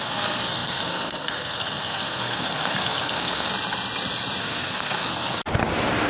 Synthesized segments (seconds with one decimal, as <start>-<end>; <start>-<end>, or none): 0.0-3.5; 4.4-5.4